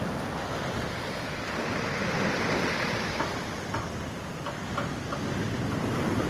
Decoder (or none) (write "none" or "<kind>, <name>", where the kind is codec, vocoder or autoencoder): none